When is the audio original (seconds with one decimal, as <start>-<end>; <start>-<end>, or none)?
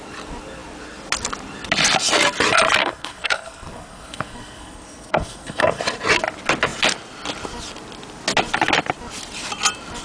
0.0-2.8; 5.8-10.0